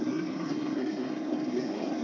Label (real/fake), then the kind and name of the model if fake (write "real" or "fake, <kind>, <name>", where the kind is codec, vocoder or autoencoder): fake, codec, SNAC